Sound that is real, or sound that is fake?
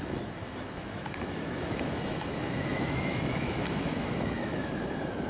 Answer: fake